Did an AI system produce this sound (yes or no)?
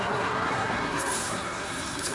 yes